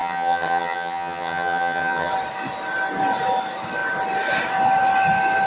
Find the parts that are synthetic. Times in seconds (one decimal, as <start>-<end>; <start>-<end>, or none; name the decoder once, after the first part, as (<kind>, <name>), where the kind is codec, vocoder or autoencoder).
0.0-2.1 (vocoder, HiFi-GAN)